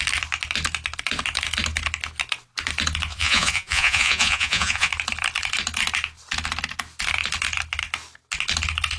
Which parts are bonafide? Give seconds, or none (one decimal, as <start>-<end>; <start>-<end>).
0.0-3.1; 4.9-9.0